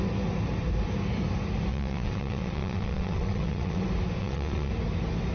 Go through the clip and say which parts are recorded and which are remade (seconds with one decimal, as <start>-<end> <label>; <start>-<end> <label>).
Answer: 0.0-1.7 recorded; 1.7-3.8 remade; 3.8-4.2 recorded; 4.2-4.7 remade; 4.7-5.3 recorded